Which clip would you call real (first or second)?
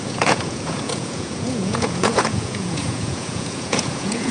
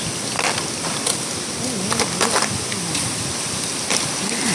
second